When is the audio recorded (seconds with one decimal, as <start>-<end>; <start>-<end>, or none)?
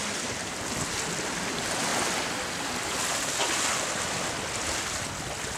0.0-5.6